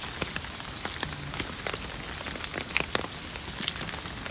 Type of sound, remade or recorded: recorded